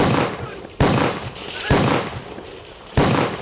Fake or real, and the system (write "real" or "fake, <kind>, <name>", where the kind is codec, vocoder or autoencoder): real